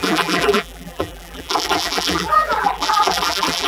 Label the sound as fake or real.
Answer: fake